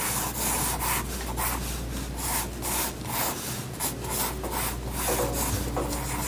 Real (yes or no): yes